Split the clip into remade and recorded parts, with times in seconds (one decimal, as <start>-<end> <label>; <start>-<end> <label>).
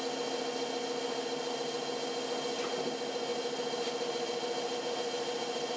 0.0-5.8 recorded